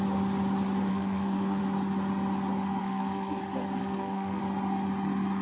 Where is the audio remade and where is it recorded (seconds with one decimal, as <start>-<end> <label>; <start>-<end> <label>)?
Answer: 0.0-0.9 recorded; 0.9-1.6 remade; 1.6-2.8 recorded; 2.8-3.4 remade; 3.4-3.8 recorded; 3.8-4.4 remade; 4.4-5.4 recorded